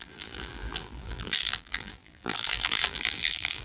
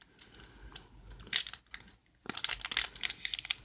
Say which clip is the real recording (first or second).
second